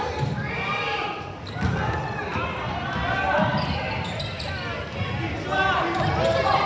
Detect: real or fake real